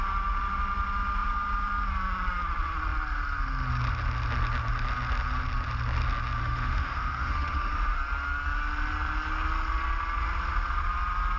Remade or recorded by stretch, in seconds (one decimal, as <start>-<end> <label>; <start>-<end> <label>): 0.0-6.4 recorded; 6.4-8.0 remade; 8.0-11.4 recorded

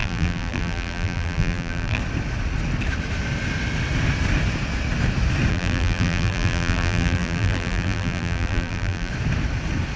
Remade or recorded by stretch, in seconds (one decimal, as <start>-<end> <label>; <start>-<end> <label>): 0.0-2.0 remade; 2.0-5.5 recorded; 5.5-9.1 remade; 9.1-10.0 recorded

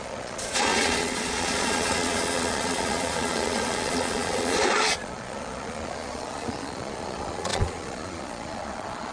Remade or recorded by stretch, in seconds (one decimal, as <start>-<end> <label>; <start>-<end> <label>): 0.0-9.1 remade

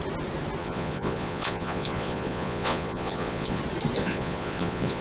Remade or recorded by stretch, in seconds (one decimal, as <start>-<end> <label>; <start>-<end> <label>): 0.0-0.6 recorded; 0.6-3.6 remade; 3.6-4.0 recorded; 4.0-5.0 remade

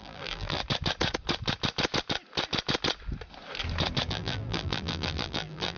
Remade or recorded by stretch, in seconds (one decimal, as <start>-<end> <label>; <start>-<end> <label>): 0.0-0.6 remade; 0.6-4.1 recorded; 4.1-5.8 remade

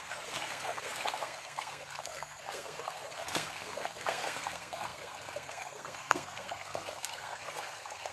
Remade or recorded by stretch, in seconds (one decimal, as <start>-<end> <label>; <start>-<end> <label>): 0.0-8.1 remade

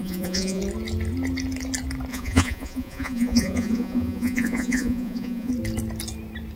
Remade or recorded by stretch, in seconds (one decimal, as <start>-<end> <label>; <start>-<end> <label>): 0.0-0.6 remade; 0.6-2.1 recorded; 2.1-5.5 remade; 5.5-6.6 recorded

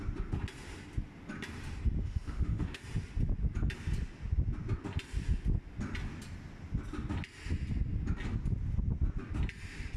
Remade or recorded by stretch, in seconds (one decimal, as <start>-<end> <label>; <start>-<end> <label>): 0.0-2.0 recorded; 2.0-2.8 remade; 2.8-10.0 recorded